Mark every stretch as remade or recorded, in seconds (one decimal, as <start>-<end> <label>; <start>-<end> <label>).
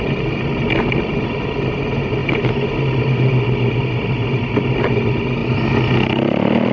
0.0-6.7 recorded